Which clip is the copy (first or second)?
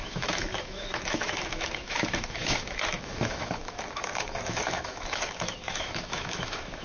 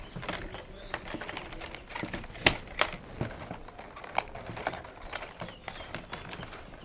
first